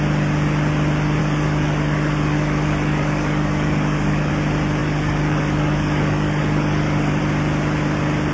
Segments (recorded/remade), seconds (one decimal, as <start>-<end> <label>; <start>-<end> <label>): 0.0-1.2 recorded; 1.2-4.3 remade; 4.3-4.8 recorded; 4.8-7.2 remade; 7.2-8.3 recorded